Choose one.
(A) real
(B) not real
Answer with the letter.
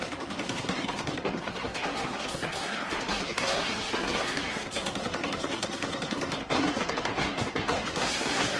B